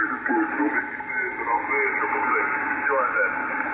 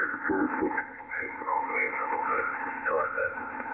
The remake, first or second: second